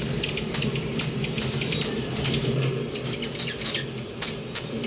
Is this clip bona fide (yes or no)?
yes